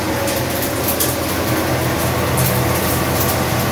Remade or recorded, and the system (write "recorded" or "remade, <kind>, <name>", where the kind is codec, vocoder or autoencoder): recorded